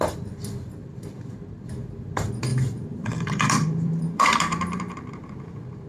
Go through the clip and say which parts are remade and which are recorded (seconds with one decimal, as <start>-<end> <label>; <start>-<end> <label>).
0.0-2.5 recorded; 2.5-5.9 remade

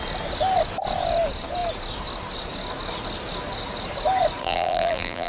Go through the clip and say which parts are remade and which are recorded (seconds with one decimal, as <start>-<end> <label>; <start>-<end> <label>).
0.0-4.4 recorded; 4.4-5.3 remade

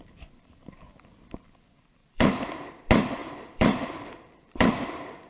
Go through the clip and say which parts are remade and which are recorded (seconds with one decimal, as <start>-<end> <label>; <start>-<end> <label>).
0.0-2.0 recorded; 2.0-2.7 remade; 2.7-3.2 recorded; 3.2-5.3 remade

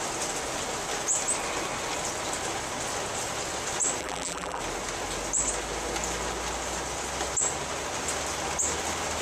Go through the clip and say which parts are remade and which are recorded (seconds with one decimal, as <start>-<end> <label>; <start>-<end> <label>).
0.0-4.0 recorded; 4.0-4.6 remade; 4.6-9.2 recorded

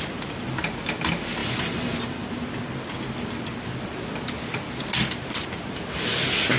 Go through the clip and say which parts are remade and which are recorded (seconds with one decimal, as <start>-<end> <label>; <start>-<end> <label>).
0.0-1.4 recorded; 1.4-2.3 remade; 2.3-6.6 recorded